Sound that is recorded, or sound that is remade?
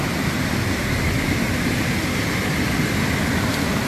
recorded